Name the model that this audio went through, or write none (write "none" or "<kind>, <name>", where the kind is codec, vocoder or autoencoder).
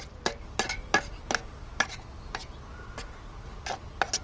none